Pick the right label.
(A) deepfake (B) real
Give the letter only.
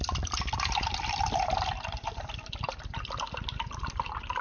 B